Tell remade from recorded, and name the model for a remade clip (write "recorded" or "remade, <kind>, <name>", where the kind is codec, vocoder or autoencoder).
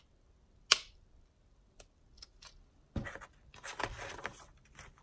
recorded